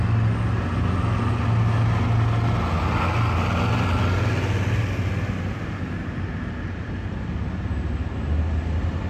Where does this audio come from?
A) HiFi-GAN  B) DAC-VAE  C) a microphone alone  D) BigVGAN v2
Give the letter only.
C